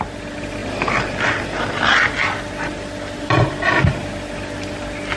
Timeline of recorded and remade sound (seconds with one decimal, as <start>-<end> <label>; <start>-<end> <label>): 0.0-5.2 recorded